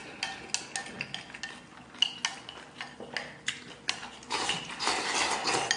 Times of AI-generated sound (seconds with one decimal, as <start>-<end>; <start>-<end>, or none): none

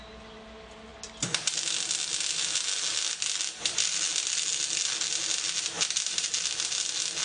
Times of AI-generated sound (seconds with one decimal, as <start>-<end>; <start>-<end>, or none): none

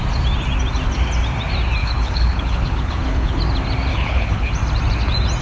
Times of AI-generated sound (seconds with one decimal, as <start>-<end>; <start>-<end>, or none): 1.8-3.4; 3.9-4.5

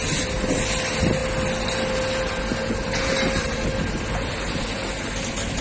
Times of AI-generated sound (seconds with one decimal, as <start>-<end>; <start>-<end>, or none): none

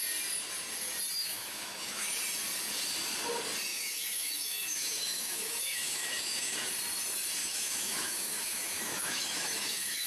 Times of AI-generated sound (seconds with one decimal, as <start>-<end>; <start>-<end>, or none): 1.2-2.2; 3.7-6.7; 7.4-10.1

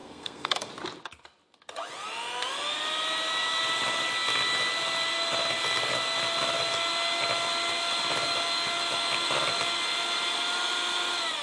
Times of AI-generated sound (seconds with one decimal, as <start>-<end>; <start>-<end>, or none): 0.0-0.7